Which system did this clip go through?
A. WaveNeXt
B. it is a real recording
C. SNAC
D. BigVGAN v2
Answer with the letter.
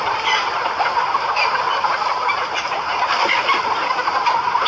B